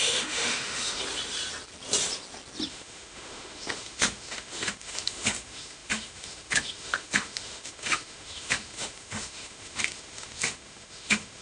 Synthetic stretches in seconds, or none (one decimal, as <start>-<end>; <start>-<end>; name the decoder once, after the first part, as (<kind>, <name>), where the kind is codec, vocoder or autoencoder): 0.0-1.0 (autoencoder, DAC-VAE); 2.7-11.4

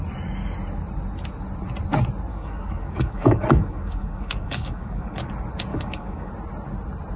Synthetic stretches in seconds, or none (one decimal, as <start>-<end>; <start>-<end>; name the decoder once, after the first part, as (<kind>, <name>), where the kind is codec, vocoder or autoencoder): 2.3-5.3 (codec, DAC); 5.7-6.3

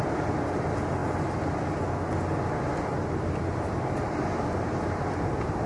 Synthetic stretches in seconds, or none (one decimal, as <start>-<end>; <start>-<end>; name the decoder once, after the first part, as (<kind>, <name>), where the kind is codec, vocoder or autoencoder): none

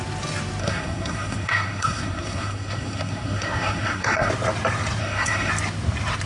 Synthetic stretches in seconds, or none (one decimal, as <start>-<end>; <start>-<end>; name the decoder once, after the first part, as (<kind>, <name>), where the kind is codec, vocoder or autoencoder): 0.6-4.3 (codec, SNAC); 5.0-5.5

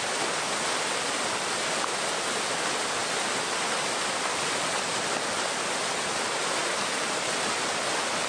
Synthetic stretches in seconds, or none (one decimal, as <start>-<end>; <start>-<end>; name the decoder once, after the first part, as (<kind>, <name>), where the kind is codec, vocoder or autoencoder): none

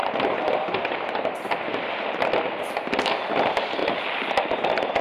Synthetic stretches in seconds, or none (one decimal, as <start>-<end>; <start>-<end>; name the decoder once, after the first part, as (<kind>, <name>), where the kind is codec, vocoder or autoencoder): 0.0-3.0 (vocoder, BigVGAN v2); 3.8-5.0

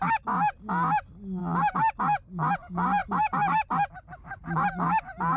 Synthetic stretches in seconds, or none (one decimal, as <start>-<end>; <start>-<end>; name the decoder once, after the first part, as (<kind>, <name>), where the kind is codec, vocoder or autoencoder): none